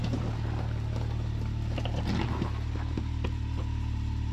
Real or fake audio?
real